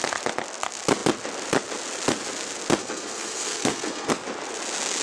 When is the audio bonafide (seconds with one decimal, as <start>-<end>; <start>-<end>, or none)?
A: 0.0-2.8; 4.1-5.0